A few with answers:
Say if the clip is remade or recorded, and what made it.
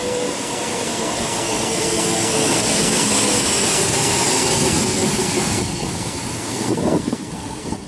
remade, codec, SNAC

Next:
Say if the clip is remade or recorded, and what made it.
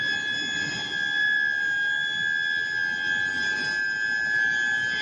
recorded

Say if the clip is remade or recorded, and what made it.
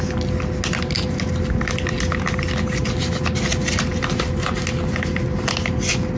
recorded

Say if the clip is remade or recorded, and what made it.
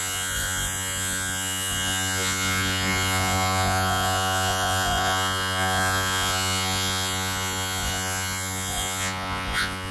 remade, vocoder, Vocos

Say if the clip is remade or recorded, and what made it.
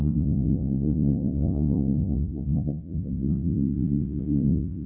remade, vocoder, Vocos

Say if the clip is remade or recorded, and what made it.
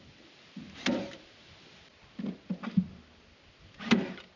recorded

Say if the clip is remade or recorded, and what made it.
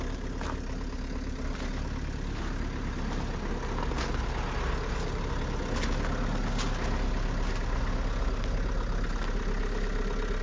recorded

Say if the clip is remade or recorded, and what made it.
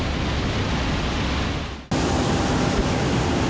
recorded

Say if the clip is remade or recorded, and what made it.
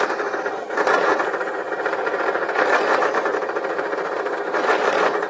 remade, vocoder, BigVGAN v2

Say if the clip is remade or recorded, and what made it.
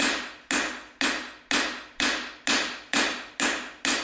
recorded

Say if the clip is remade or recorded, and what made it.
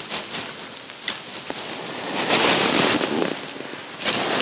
recorded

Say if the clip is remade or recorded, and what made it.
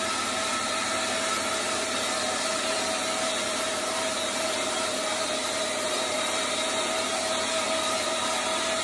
recorded